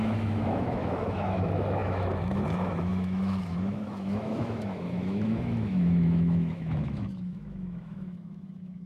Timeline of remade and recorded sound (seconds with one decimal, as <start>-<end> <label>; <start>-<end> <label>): 0.0-8.9 remade